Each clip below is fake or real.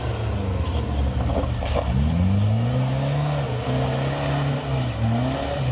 real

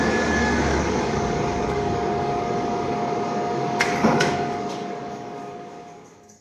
fake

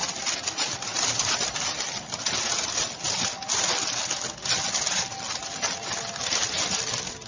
real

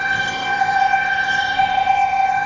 fake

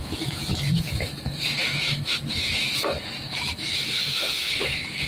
fake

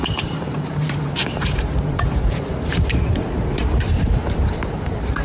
fake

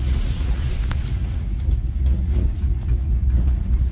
fake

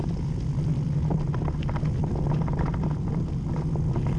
real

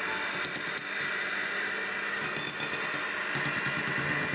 real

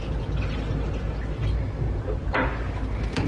real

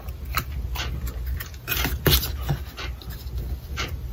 real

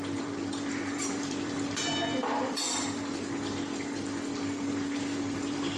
fake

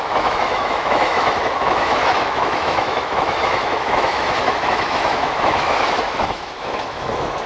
fake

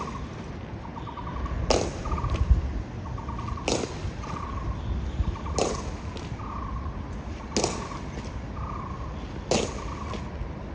real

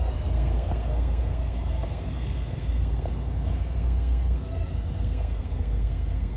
fake